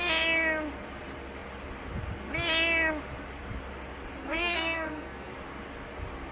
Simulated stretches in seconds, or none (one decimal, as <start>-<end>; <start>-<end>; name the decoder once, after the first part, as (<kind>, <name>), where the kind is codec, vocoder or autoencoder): 4.2-5.3 (codec, SNAC)